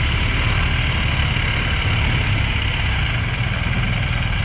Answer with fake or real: real